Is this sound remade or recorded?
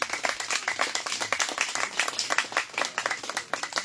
recorded